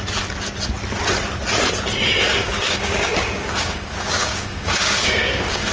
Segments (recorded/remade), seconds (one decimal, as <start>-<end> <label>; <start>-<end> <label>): 0.0-2.4 recorded; 2.4-5.7 remade